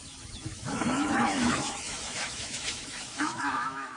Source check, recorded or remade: remade